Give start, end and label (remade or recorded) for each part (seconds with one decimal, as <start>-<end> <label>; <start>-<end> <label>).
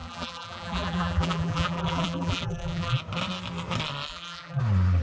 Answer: 0.0-3.0 remade; 3.0-4.1 recorded; 4.1-4.6 remade; 4.6-5.0 recorded